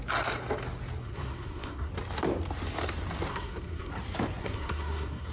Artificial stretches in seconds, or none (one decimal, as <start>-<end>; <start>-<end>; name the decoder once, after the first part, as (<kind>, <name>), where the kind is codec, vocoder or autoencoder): 1.0-1.9 (codec, SNAC); 3.3-3.9; 4.4-5.3